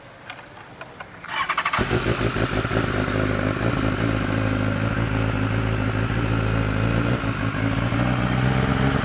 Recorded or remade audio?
recorded